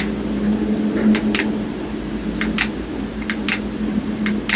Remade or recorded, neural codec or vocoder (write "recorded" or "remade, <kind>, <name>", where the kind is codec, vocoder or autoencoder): recorded